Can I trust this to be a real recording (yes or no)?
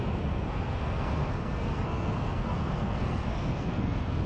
no